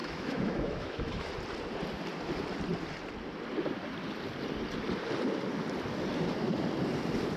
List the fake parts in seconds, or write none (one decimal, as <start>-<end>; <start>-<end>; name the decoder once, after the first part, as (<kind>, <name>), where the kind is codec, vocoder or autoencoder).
0.0-1.3 (autoencoder, DAC-VAE)